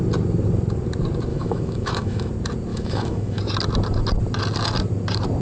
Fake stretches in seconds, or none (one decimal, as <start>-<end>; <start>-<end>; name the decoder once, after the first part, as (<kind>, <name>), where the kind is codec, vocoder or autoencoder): 1.3-2.3 (autoencoder, DAC-VAE); 2.7-3.4